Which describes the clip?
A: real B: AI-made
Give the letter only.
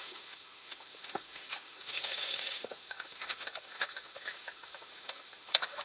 B